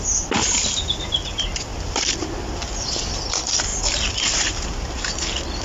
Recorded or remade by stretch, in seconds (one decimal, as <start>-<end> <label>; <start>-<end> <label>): 0.0-1.7 recorded; 1.7-3.1 remade; 3.1-3.7 recorded; 3.7-5.0 remade; 5.0-5.6 recorded